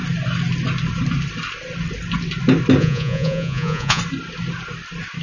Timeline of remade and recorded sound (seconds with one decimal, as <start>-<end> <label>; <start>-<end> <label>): 0.0-2.8 recorded; 2.8-4.0 remade; 4.0-5.2 recorded